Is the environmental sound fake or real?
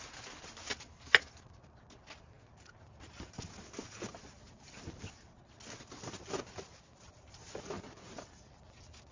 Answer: real